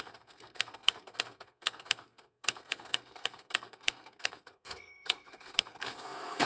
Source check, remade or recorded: remade